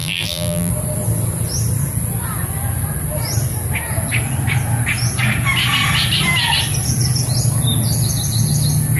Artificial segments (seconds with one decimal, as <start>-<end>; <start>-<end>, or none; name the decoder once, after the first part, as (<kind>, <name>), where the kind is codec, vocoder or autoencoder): 0.0-0.7 (vocoder, BigVGAN v2)